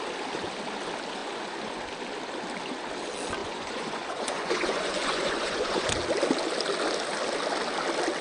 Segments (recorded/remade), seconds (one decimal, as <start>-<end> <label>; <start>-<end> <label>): 0.0-1.2 recorded; 1.2-1.8 remade; 1.8-3.4 recorded; 3.4-5.9 remade; 5.9-8.2 recorded